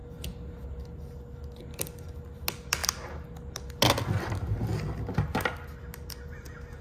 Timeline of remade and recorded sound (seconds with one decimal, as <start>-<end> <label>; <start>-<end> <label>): 0.0-6.8 recorded